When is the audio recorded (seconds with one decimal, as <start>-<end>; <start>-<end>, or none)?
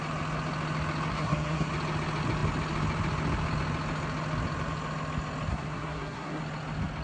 0.0-1.1; 1.7-5.5; 6.4-7.0